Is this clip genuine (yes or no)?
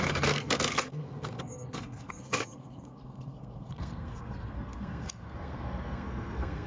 no